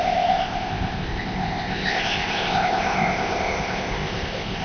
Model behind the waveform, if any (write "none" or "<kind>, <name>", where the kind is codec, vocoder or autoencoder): codec, ZipCodec